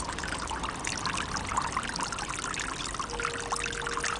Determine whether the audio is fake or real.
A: real